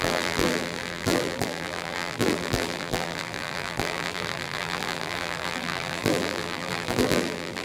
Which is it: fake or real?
fake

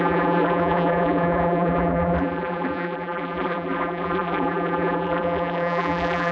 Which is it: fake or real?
fake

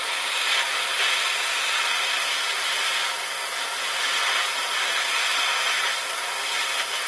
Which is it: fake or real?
real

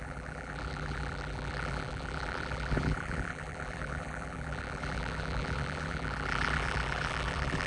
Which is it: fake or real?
fake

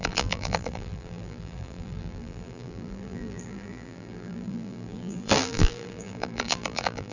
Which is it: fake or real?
fake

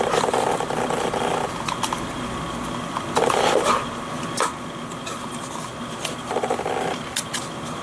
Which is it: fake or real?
real